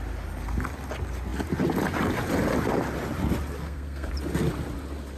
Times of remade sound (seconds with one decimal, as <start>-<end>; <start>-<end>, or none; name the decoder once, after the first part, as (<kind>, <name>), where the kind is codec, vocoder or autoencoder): 3.6-4.1 (codec, SNAC)